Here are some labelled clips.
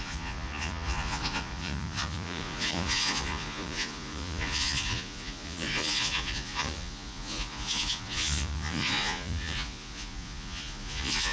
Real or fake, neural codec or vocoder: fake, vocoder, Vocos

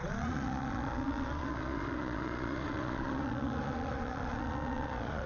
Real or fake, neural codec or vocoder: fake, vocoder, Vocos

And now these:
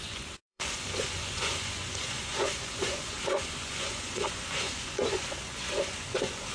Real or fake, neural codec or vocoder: fake, vocoder, Vocos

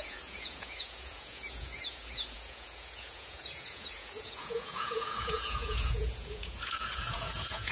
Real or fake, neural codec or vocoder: fake, vocoder, Vocos